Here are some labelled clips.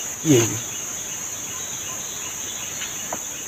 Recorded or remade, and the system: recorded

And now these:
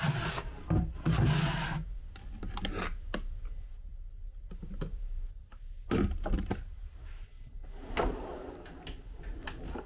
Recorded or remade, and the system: recorded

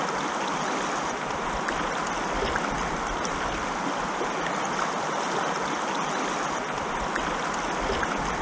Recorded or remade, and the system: recorded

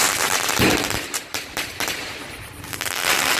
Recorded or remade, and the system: remade, vocoder, BigVGAN v2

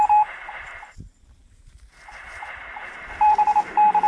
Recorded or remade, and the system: remade, vocoder, BigVGAN v2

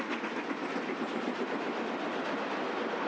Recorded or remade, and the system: recorded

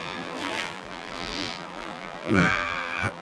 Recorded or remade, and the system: remade, vocoder, BigVGAN v2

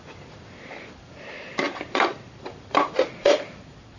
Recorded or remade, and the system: remade, vocoder, BigVGAN v2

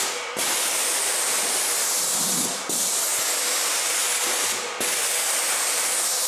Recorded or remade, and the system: remade, vocoder, BigVGAN v2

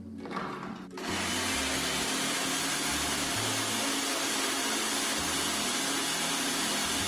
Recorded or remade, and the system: recorded